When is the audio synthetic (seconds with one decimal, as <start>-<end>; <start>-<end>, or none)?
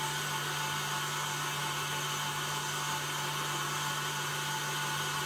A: none